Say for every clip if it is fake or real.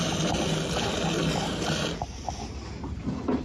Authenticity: real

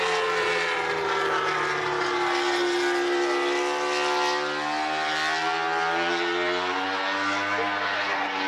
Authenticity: real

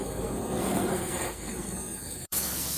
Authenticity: fake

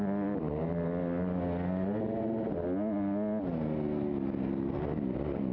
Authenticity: real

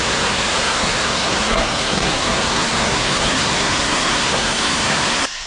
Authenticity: fake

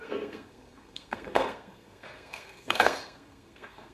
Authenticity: fake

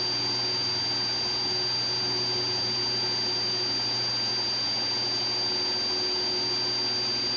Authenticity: real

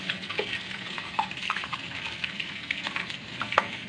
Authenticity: fake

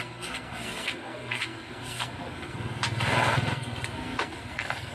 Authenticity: fake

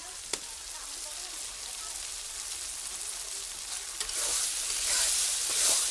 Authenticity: real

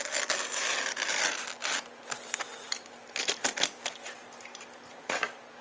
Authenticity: real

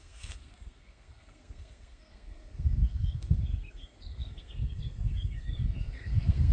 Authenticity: fake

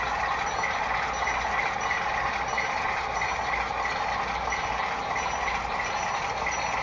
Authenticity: real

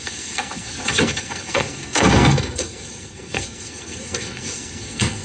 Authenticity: fake